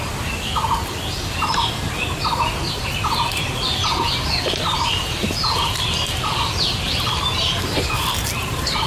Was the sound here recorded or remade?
recorded